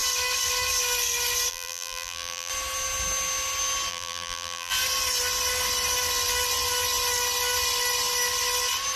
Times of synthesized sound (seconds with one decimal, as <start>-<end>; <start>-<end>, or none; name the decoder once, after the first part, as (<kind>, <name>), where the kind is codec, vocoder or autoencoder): 1.5-2.5 (vocoder, BigVGAN v2); 3.9-4.7